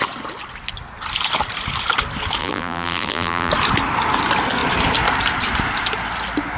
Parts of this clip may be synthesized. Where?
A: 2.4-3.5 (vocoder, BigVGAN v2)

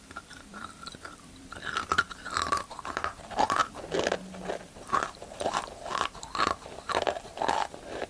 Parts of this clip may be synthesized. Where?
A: 0.0-3.6 (vocoder, BigVGAN v2); 4.5-8.1

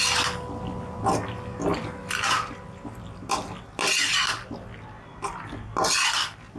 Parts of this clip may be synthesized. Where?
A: none

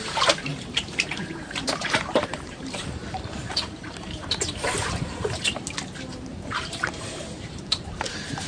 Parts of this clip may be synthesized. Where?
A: 0.5-5.6 (vocoder, BigVGAN v2); 6.3-7.6

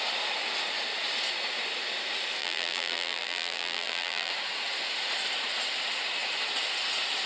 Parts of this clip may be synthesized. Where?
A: 2.4-4.3 (vocoder, BigVGAN v2)

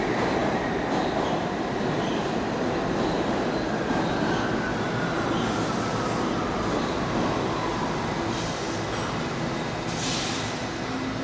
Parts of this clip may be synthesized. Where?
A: none